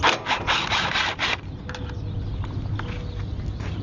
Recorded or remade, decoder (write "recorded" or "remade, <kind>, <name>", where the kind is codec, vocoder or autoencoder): recorded